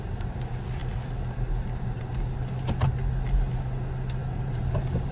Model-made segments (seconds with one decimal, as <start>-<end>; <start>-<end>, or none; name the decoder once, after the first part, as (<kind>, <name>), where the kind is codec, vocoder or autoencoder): 4.2-5.1 (vocoder, BigVGAN v2)